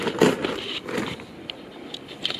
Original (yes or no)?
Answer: no